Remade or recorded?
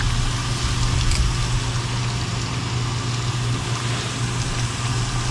recorded